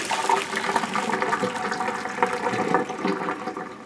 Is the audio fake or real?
real